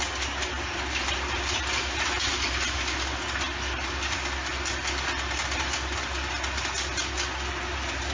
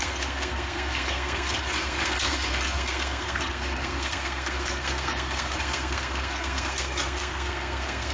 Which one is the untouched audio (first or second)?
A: first